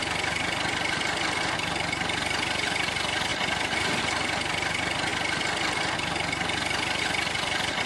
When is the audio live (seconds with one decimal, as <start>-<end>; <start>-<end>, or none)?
5.1-7.0